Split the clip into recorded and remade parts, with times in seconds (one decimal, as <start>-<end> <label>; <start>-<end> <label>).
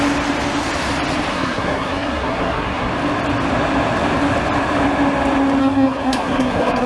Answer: 0.0-1.3 recorded; 1.3-2.9 remade; 2.9-5.6 recorded; 5.6-6.9 remade